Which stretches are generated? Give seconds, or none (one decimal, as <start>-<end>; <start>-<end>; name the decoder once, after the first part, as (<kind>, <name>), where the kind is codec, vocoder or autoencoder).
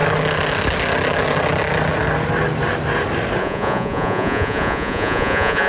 3.4-5.7 (vocoder, Vocos)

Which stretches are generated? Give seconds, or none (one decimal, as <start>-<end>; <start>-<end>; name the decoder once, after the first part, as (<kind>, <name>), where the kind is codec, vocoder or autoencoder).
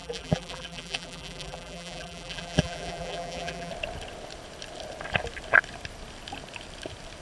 0.0-3.7 (vocoder, BigVGAN v2)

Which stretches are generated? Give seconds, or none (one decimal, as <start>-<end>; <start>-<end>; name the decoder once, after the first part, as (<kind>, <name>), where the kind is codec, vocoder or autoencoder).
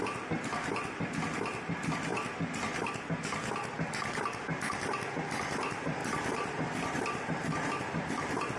6.0-7.7 (vocoder, BigVGAN v2)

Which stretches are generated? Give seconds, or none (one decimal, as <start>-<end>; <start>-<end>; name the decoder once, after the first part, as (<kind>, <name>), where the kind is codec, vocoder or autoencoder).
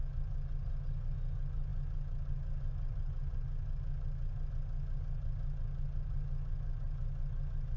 none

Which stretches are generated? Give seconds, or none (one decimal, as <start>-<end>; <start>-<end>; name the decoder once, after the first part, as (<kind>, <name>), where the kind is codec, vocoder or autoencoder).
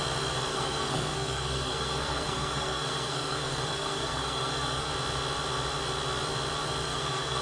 0.5-4.9 (codec, SNAC); 6.9-7.4